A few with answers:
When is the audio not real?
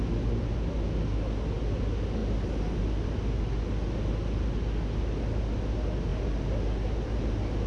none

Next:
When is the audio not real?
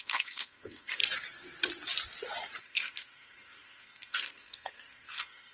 0.0-1.0; 2.6-5.5